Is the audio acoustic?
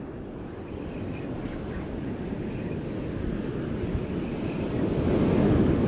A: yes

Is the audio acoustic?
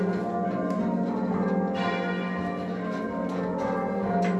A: yes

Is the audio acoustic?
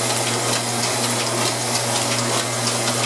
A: yes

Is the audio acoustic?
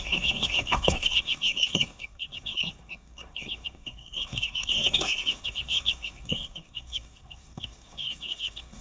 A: no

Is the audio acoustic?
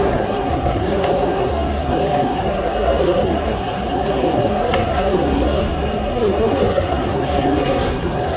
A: no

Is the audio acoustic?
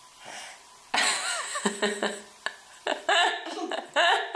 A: yes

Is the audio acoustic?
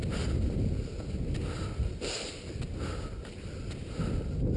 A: yes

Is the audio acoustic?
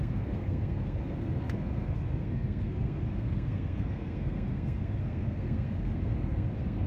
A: no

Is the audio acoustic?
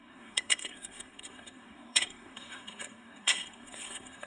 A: no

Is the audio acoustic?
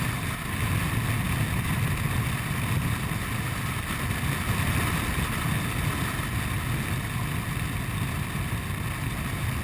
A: yes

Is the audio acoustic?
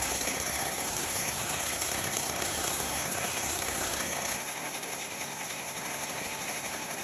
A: no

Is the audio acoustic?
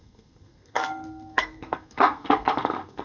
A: no